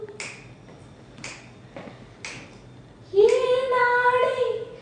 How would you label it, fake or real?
real